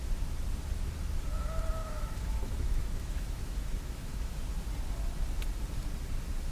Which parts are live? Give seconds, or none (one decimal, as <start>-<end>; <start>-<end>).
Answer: 0.0-1.8; 4.3-6.5